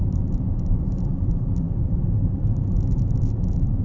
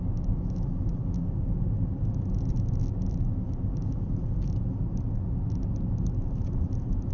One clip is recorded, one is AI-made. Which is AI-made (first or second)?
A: first